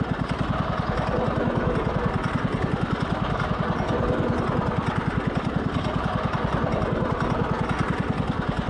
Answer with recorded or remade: recorded